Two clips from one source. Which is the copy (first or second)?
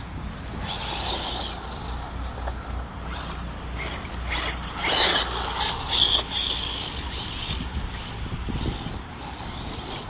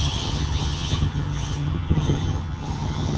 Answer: second